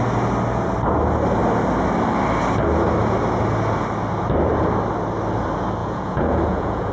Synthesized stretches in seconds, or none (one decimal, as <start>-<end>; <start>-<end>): 5.8-6.9